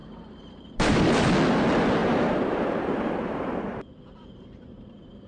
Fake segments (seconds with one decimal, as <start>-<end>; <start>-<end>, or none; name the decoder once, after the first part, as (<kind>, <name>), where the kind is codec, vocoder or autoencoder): 0.0-1.3 (vocoder, BigVGAN v2); 2.0-5.3

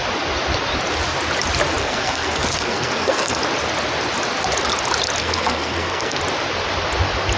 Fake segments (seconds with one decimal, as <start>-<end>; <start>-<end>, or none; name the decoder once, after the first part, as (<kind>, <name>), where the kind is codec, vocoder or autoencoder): 1.8-3.4 (codec, SNAC); 5.2-6.2

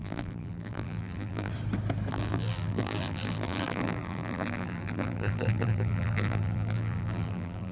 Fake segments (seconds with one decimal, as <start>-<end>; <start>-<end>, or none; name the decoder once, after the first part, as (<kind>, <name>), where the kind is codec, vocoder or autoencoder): 0.0-1.5 (vocoder, BigVGAN v2); 2.1-7.7

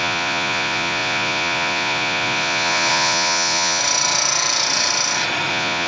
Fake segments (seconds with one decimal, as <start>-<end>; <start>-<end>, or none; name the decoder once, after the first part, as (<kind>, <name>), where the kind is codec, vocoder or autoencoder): 0.0-3.8 (vocoder, Vocos); 5.5-5.9